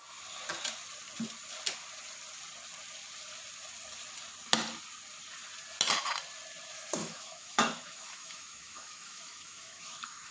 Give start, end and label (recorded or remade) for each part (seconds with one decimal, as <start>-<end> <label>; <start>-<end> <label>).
0.0-7.0 recorded; 7.0-10.3 remade